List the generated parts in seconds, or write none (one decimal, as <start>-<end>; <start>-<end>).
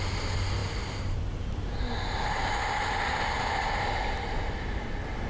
none